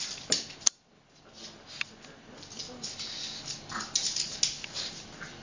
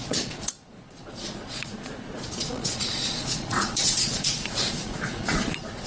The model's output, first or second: second